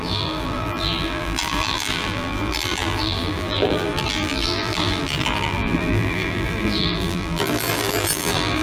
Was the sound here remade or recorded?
remade